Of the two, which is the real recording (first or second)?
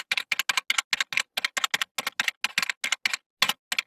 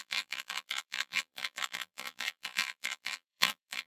first